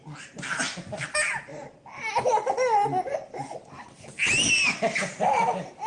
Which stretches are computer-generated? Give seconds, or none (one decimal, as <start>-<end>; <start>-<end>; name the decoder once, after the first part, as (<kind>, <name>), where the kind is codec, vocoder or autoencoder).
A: none